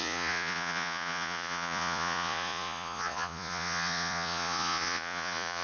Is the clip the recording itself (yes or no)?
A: no